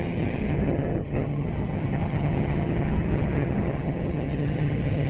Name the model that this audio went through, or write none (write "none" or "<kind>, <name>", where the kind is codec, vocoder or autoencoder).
vocoder, HiFi-GAN